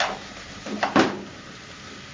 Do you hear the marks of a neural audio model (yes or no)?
yes